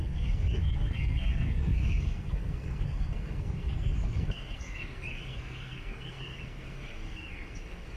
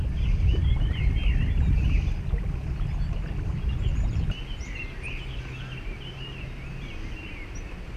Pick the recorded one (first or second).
second